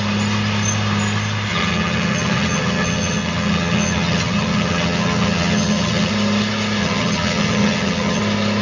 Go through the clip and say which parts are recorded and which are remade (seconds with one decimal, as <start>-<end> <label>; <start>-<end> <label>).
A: 0.0-1.5 recorded; 1.5-6.1 remade; 6.1-6.8 recorded; 6.8-8.2 remade; 8.2-8.6 recorded